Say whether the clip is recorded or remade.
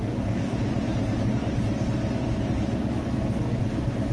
recorded